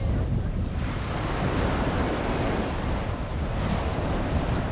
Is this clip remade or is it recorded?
remade